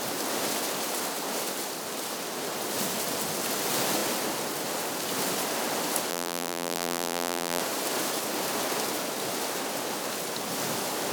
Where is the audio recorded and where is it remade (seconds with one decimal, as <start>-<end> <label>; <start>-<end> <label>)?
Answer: 0.0-6.1 recorded; 6.1-7.6 remade; 7.6-11.1 recorded